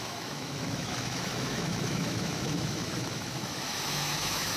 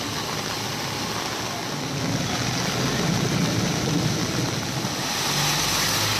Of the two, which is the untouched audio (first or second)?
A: second